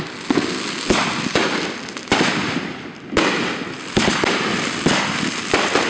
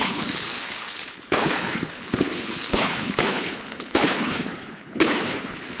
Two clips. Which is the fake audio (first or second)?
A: second